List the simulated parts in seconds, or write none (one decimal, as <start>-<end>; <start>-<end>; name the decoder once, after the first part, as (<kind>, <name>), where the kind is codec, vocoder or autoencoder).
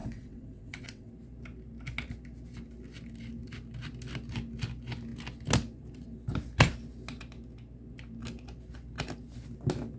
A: 0.0-1.1 (vocoder, WaveNeXt)